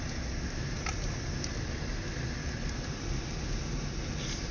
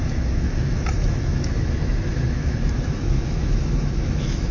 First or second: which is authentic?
first